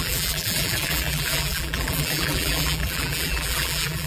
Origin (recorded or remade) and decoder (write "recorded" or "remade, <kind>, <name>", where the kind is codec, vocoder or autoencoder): remade, vocoder, BigVGAN v2